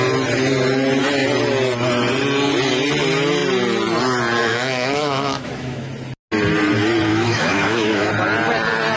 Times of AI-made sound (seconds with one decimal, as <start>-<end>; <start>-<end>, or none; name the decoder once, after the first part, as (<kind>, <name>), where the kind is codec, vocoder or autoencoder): 4.4-5.9 (autoencoder, DAC-VAE); 7.1-8.1

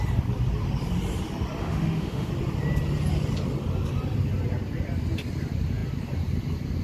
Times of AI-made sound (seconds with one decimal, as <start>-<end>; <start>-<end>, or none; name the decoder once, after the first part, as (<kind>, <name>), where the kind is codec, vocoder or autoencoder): 1.6-2.3 (autoencoder, DAC-VAE)

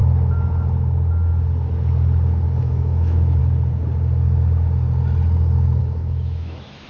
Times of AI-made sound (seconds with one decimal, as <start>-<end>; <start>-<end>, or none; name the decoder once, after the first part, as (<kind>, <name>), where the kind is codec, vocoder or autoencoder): 2.6-3.4 (autoencoder, DAC-VAE); 5.8-6.9

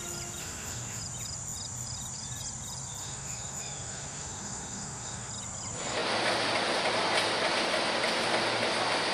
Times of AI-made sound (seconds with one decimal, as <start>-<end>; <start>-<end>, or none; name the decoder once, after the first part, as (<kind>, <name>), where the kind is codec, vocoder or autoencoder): 0.4-1.0 (autoencoder, DAC-VAE); 3.0-5.3